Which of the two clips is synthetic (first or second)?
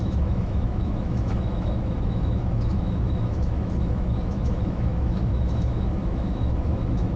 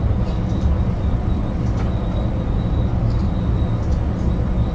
first